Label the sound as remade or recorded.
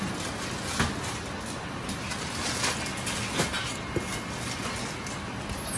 recorded